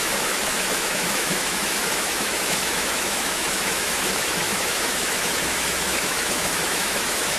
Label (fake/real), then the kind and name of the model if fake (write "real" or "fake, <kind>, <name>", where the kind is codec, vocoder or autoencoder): fake, autoencoder, DAC-VAE